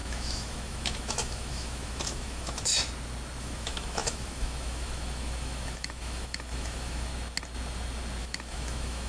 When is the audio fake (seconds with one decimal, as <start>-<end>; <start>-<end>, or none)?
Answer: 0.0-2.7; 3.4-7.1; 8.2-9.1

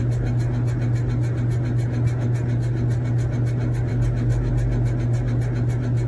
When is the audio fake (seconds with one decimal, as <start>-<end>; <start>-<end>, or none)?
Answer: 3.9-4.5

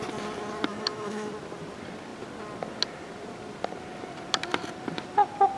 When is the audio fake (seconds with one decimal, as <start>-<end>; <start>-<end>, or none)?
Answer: 0.7-1.3

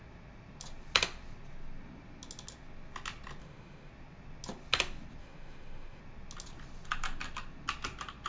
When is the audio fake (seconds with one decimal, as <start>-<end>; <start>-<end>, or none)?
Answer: 3.4-3.9; 5.2-6.0

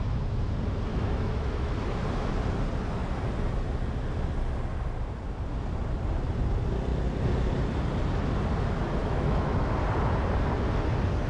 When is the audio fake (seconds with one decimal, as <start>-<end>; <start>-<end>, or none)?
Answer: 0.9-1.7; 9.0-9.7

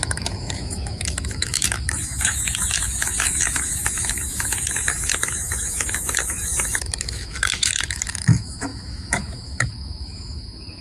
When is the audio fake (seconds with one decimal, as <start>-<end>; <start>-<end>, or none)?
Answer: 0.0-10.8